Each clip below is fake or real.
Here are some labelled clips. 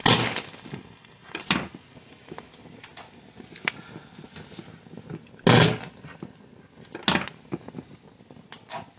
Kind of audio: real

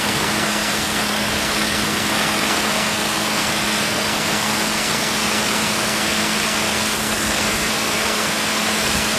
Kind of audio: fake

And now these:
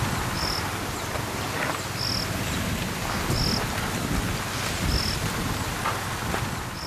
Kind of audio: real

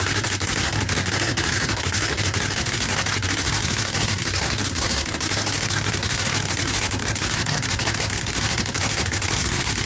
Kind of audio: fake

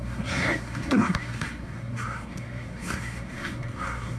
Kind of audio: fake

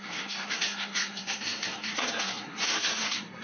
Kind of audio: fake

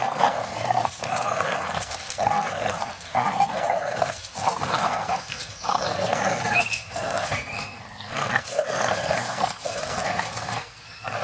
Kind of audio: fake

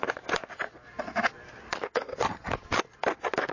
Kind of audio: real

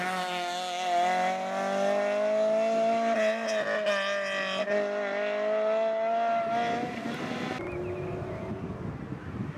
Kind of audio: real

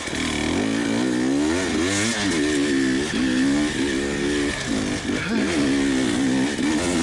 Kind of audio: real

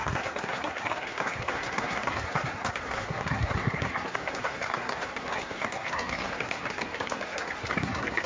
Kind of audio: fake